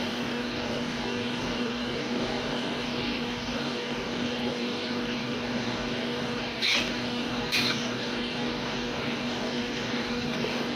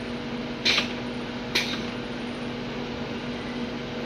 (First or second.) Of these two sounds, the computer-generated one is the first